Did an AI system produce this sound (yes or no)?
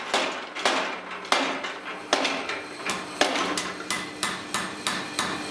no